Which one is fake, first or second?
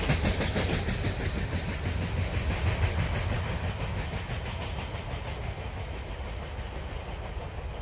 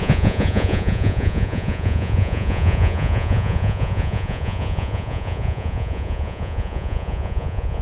second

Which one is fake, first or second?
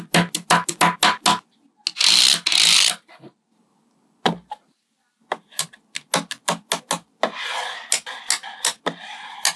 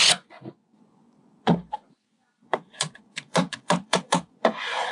second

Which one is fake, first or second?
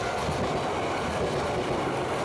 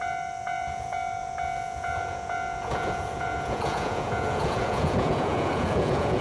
second